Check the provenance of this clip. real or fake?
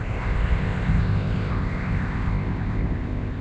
fake